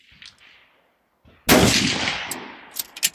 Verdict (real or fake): real